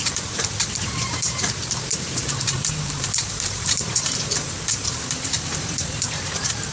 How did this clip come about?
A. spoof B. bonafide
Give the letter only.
A